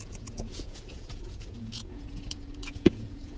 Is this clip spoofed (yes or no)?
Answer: yes